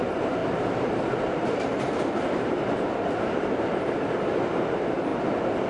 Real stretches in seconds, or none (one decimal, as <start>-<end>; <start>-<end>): 5.1-5.7